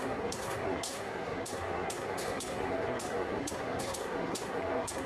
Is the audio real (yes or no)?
no